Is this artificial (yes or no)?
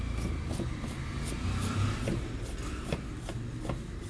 no